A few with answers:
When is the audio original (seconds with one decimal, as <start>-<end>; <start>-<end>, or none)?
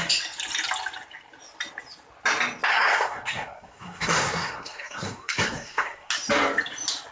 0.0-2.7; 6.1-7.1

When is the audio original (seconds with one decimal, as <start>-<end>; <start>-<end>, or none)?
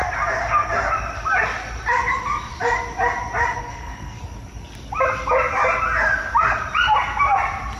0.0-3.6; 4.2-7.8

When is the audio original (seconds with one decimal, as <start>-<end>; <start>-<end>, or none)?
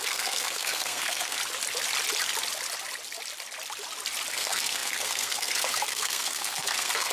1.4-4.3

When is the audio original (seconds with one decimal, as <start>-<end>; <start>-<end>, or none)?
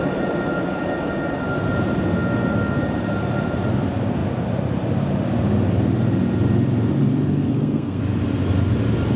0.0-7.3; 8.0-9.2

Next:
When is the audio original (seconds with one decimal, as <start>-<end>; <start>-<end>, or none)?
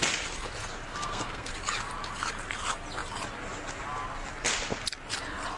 0.0-0.9; 1.5-5.6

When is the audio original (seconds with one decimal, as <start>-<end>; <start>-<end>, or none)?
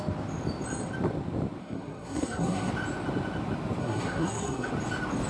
0.0-1.6; 2.7-3.8; 4.7-5.3